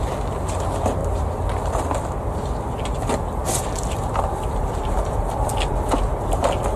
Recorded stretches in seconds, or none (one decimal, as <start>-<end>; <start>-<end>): 0.0-1.0; 1.7-3.4; 5.9-6.8